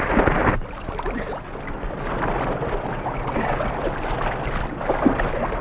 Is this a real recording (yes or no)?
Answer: yes